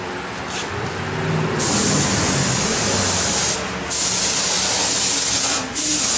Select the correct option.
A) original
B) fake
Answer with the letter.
A